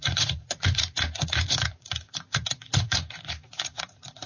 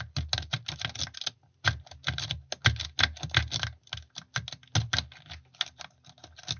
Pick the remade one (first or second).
first